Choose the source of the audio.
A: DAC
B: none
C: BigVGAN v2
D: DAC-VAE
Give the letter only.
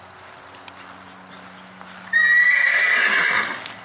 B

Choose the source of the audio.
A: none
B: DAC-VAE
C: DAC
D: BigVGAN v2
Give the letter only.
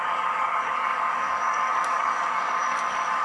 C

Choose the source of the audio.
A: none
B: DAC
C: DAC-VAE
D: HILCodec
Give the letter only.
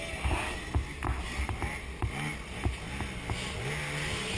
A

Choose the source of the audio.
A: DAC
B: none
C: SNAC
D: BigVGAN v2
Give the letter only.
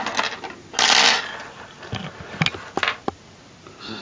B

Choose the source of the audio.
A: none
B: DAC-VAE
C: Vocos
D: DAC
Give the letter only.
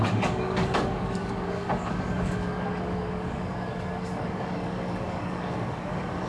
D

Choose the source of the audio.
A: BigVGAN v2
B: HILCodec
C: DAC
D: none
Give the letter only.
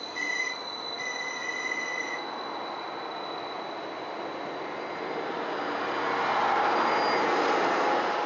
D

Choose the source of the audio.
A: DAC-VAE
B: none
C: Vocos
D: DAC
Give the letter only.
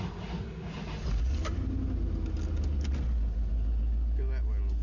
B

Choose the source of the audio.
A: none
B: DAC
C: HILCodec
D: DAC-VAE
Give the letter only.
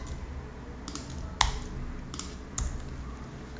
A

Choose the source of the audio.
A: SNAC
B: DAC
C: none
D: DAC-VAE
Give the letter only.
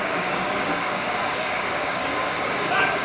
B